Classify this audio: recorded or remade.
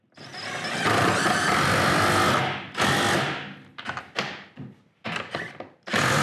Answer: recorded